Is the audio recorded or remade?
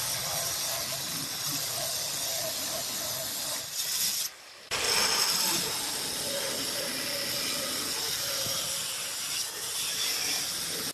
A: recorded